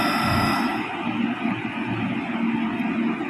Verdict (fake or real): real